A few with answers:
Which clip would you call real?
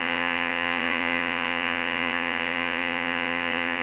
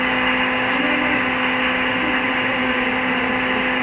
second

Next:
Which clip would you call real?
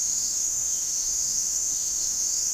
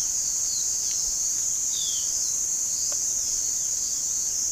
second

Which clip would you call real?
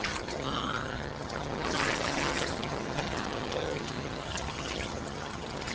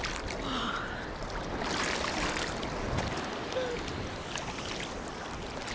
second